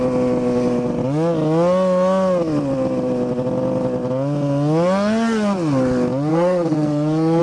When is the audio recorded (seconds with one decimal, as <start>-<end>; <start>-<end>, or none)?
0.0-6.3